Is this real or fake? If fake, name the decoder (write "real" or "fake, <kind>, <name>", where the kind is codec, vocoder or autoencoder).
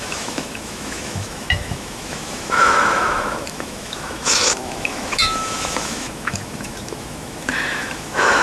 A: fake, autoencoder, DAC-VAE